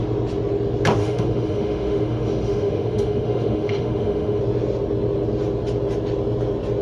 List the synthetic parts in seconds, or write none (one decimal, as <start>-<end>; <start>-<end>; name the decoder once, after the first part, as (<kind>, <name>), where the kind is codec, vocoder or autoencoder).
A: 1.0-4.4 (autoencoder, DAC-VAE)